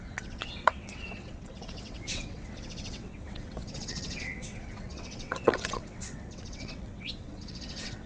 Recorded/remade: remade